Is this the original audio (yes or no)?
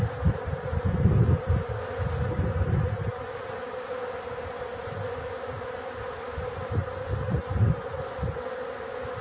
yes